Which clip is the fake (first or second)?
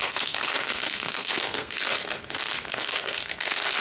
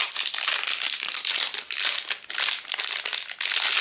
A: first